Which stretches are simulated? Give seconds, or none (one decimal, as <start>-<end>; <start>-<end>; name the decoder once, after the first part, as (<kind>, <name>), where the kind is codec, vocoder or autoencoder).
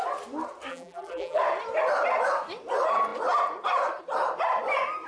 0.7-1.4 (vocoder, BigVGAN v2)